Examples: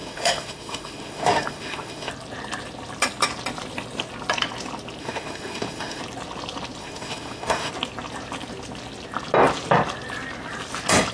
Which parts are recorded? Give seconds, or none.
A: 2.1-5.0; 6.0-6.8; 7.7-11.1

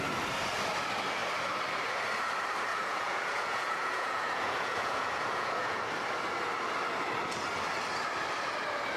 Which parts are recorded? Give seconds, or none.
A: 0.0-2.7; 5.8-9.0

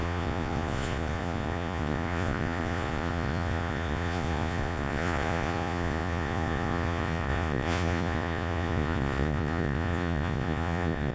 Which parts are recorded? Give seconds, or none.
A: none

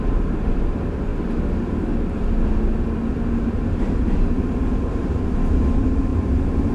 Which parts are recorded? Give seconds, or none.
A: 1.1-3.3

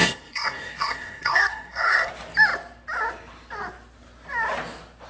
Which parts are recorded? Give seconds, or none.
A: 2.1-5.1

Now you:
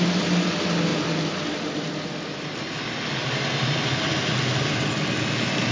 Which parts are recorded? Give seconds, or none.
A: 0.0-5.7

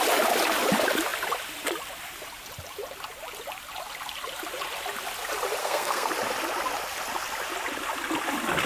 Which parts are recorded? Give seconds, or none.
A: 0.0-5.6; 6.1-8.7

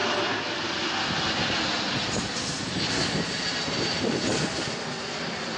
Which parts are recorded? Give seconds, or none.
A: 0.0-5.6